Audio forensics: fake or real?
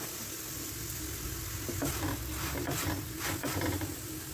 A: real